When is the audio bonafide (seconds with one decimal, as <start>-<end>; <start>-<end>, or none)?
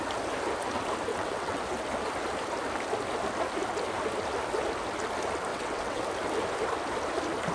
0.0-1.1; 1.6-5.5; 6.0-7.5